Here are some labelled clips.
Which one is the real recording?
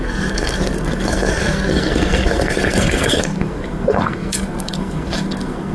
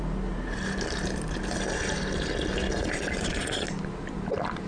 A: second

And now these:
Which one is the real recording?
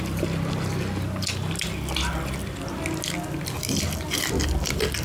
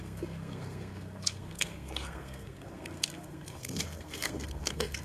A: first